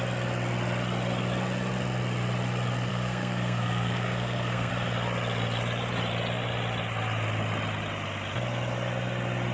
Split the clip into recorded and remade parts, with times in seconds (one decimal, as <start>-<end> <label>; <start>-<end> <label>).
0.0-2.9 recorded; 2.9-4.7 remade; 4.7-9.5 recorded